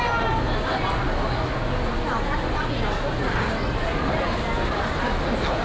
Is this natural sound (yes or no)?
yes